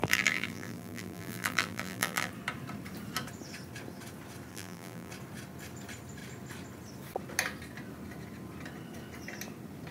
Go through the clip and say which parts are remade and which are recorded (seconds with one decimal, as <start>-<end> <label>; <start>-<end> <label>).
0.0-2.3 remade; 2.3-4.5 recorded; 4.5-5.1 remade; 5.1-9.9 recorded